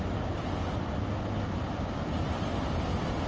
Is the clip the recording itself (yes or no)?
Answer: yes